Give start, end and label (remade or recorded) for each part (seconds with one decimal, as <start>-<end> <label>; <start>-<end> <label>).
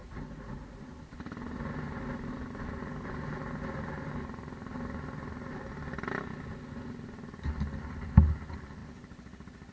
0.0-0.8 remade; 0.8-9.7 recorded